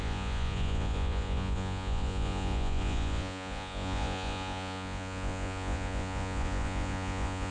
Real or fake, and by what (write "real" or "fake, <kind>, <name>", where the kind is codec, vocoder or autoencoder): fake, vocoder, Vocos